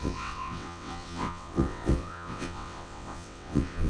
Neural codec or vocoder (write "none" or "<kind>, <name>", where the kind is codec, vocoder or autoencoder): vocoder, WaveNeXt